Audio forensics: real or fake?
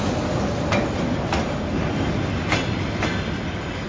real